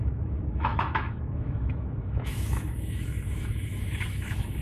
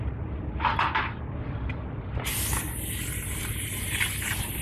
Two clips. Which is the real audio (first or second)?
second